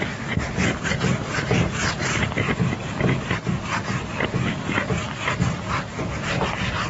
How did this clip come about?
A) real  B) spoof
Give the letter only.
A